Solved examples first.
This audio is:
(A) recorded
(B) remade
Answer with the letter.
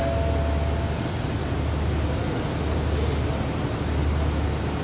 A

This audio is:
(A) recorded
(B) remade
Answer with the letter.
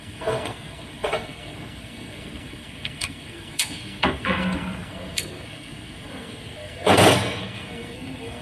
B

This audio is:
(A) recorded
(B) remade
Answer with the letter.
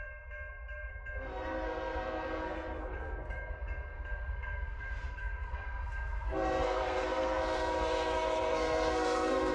B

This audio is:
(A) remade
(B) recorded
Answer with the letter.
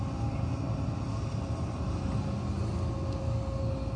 B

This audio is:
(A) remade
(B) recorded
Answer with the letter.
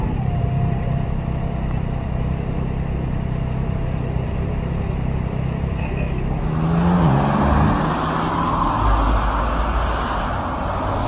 B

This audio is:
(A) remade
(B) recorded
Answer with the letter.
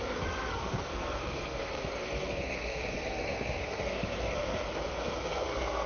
A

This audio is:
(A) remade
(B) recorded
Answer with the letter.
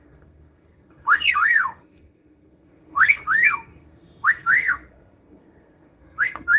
A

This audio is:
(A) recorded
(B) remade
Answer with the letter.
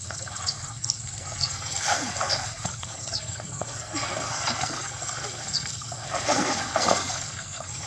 B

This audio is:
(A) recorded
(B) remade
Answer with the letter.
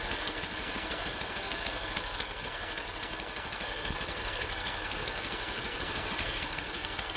B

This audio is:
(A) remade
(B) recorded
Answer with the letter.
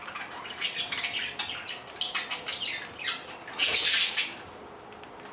B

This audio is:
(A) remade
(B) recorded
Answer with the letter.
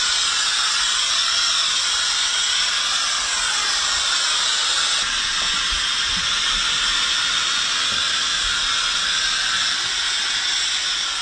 B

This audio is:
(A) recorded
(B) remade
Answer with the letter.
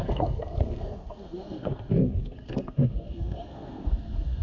B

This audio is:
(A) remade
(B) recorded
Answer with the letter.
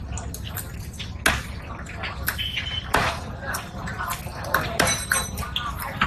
B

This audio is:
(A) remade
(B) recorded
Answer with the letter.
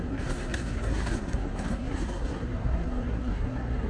A